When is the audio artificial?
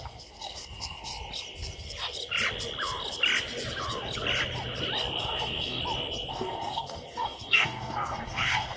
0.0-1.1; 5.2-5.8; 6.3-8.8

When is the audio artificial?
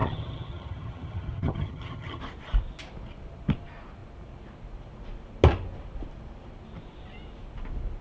0.0-2.2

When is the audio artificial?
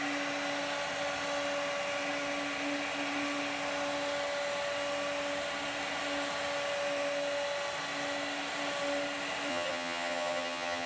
9.5-10.9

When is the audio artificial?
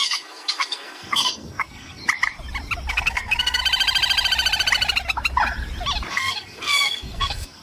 0.0-2.0; 2.9-3.6; 6.1-7.6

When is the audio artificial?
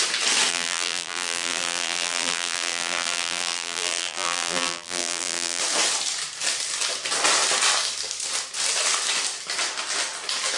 0.5-5.6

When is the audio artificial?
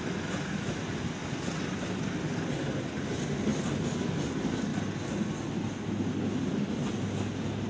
none